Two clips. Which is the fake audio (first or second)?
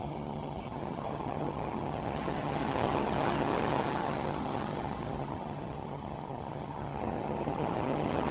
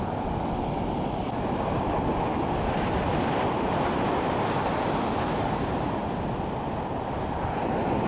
first